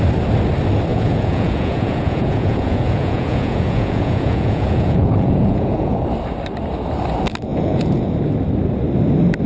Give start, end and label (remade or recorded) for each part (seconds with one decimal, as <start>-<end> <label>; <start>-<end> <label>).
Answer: 0.0-0.9 recorded; 0.9-6.0 remade; 6.0-7.5 recorded; 7.5-8.1 remade; 8.1-9.5 recorded